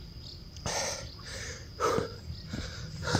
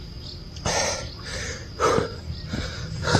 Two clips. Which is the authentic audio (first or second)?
second